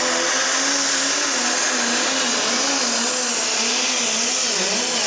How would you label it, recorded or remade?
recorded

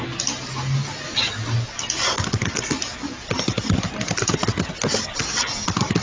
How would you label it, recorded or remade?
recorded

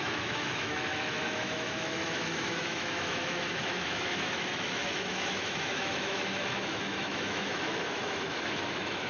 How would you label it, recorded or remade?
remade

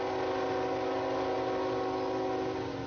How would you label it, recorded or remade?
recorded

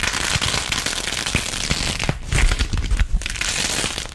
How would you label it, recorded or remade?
recorded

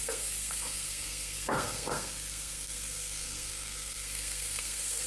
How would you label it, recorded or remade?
remade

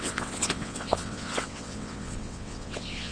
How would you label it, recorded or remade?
remade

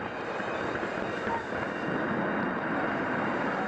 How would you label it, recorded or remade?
recorded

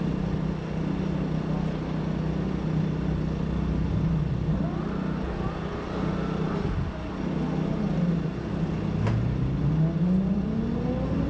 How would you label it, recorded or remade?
recorded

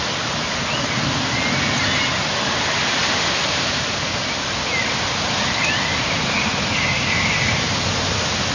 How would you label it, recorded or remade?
recorded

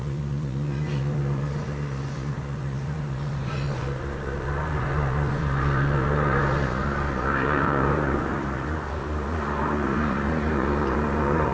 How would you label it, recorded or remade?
remade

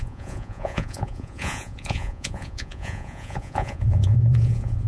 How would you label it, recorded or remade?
remade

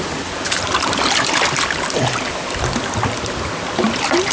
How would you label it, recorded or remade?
recorded